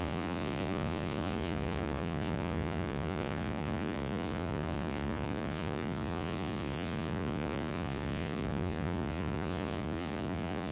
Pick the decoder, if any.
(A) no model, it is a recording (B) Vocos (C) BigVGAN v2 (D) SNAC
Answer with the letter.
B